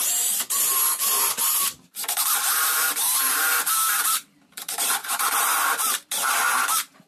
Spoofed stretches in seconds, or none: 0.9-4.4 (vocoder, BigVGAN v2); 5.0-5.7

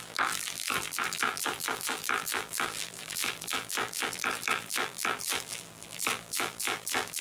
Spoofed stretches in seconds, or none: 0.0-7.2 (vocoder, BigVGAN v2)

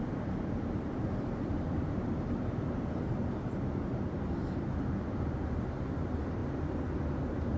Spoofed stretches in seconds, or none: 0.0-6.4 (vocoder, BigVGAN v2); 7.0-7.6

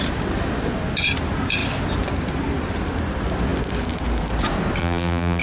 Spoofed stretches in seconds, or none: 4.8-5.4 (vocoder, BigVGAN v2)